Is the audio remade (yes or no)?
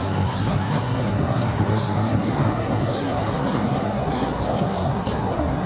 yes